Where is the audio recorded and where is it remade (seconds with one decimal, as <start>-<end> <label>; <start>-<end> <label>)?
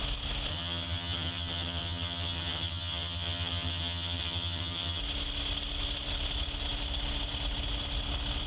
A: 0.0-0.5 recorded; 0.5-5.0 remade; 5.0-8.5 recorded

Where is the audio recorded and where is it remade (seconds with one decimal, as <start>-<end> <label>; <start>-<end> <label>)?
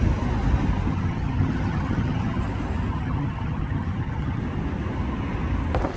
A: 0.0-0.9 recorded; 0.9-2.4 remade; 2.4-2.9 recorded; 2.9-4.4 remade; 4.4-6.0 recorded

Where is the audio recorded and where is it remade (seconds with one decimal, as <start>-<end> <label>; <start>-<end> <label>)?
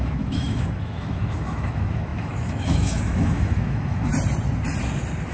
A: 0.0-4.1 remade; 4.1-5.3 recorded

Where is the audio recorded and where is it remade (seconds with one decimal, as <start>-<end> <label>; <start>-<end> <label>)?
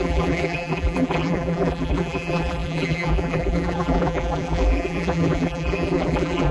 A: 0.0-6.5 remade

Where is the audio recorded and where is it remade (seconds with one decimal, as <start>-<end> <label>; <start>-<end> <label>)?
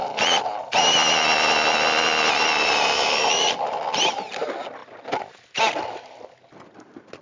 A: 0.0-7.2 recorded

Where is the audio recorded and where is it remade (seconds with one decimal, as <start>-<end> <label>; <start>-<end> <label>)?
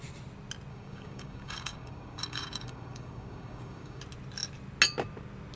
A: 0.0-0.7 recorded; 0.7-4.0 remade; 4.0-5.5 recorded